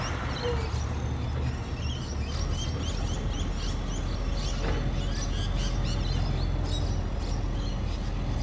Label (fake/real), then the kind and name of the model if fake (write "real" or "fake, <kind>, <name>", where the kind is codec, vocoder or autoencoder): real